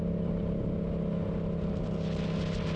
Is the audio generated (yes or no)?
no